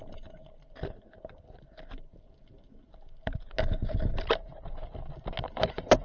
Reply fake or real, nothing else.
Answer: real